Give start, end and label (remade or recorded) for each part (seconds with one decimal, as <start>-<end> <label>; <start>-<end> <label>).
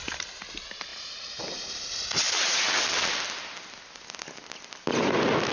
0.0-5.5 recorded